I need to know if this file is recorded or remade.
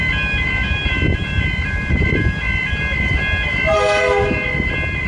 recorded